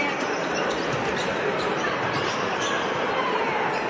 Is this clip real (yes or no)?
no